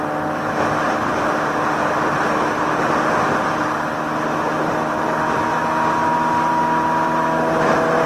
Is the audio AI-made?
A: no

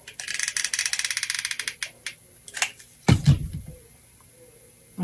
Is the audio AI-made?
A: no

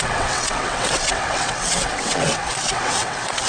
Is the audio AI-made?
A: yes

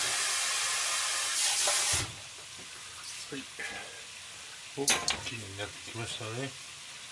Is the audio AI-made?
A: no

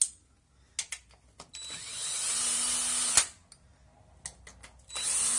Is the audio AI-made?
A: no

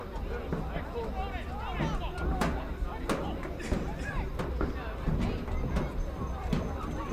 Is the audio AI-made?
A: no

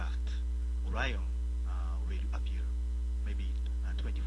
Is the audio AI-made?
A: no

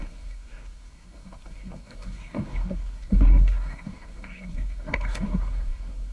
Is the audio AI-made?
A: yes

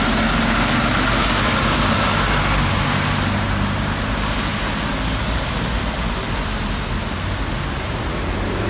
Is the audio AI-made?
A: no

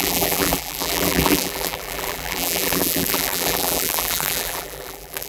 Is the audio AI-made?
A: yes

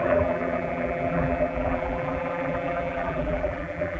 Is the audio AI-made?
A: yes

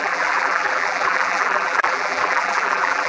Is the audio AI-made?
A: yes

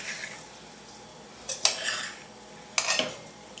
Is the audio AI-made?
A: no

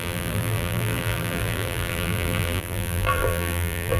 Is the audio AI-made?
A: yes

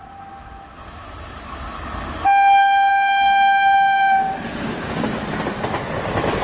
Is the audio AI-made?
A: no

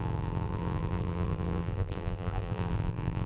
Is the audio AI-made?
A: yes